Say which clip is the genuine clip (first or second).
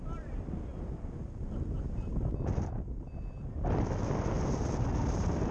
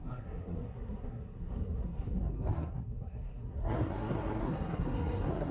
first